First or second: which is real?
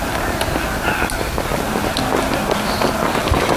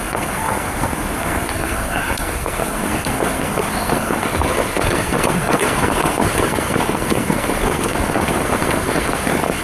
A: first